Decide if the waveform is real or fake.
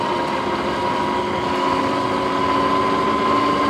real